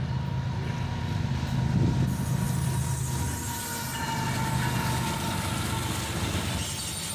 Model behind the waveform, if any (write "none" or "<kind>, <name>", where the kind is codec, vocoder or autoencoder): none